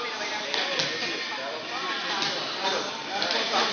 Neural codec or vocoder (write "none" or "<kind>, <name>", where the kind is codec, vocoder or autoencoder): none